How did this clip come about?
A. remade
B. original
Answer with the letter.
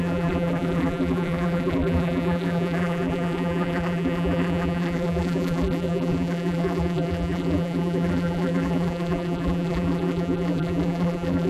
A